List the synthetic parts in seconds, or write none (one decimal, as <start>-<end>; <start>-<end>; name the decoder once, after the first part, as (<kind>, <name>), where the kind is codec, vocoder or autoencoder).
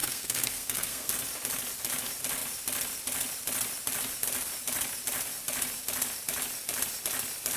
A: 0.0-1.1 (codec, SNAC)